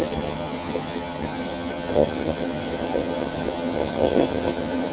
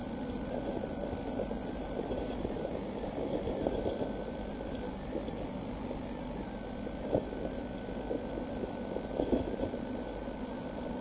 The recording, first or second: second